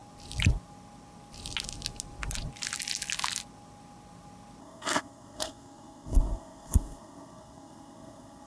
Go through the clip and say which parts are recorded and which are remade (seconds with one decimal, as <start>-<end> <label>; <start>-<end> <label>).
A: 0.0-4.6 recorded; 4.6-8.5 remade